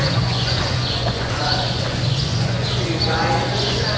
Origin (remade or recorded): remade